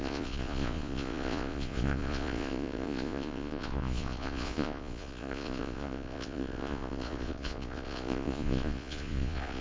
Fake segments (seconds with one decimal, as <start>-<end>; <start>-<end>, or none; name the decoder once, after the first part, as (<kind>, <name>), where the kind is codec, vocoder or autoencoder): 0.0-9.6 (vocoder, Vocos)